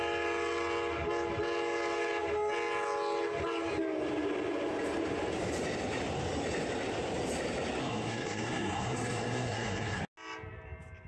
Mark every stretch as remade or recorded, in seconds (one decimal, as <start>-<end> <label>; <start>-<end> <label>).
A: 0.0-7.8 recorded; 7.8-10.0 remade; 10.0-11.1 recorded